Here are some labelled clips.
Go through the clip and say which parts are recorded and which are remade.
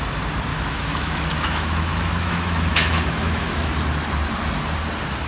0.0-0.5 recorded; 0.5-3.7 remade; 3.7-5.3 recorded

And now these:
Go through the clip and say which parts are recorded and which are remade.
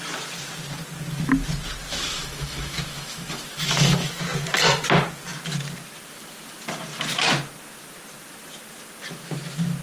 0.0-1.9 recorded; 1.9-4.2 remade; 4.2-9.8 recorded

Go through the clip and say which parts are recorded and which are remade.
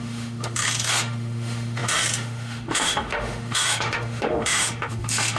0.0-5.4 remade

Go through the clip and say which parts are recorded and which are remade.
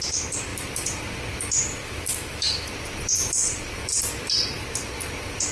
0.0-1.8 recorded; 1.8-2.7 remade; 2.7-5.5 recorded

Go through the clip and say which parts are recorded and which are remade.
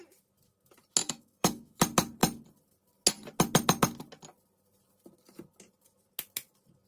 0.0-1.0 recorded; 1.0-1.8 remade; 1.8-6.9 recorded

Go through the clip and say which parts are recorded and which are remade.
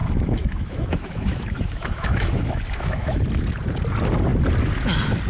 0.0-3.2 remade; 3.2-5.3 recorded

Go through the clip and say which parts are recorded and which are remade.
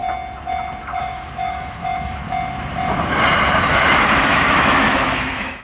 0.0-1.0 recorded; 1.0-2.2 remade; 2.2-4.3 recorded; 4.3-5.6 remade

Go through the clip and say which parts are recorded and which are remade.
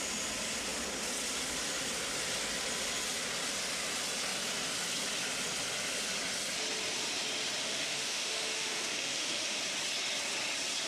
0.0-7.6 recorded; 7.6-9.6 remade; 9.6-10.9 recorded